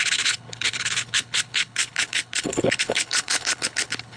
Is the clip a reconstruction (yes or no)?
yes